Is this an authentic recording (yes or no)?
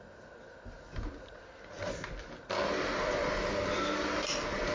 no